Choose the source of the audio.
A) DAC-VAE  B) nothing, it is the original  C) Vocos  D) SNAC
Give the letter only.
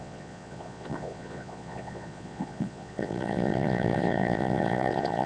C